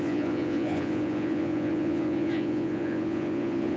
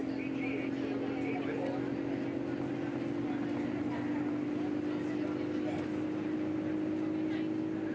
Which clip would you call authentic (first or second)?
second